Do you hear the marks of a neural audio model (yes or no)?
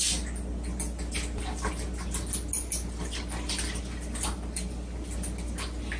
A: no